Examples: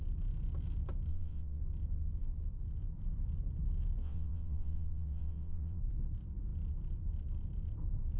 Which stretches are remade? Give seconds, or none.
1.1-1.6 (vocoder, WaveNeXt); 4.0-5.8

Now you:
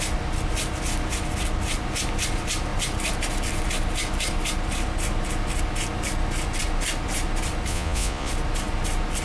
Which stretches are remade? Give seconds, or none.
7.7-8.3 (vocoder, Vocos)

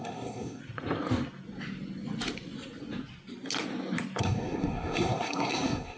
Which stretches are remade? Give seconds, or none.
0.0-0.6 (codec, SNAC); 4.2-6.0

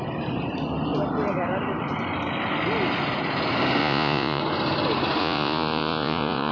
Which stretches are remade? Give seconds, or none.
3.8-4.4 (vocoder, Vocos); 5.2-6.5